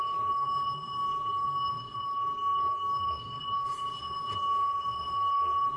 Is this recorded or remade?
remade